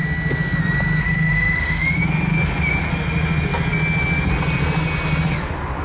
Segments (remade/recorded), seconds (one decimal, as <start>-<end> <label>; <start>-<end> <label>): 0.0-1.0 recorded; 1.0-2.0 remade; 2.0-5.8 recorded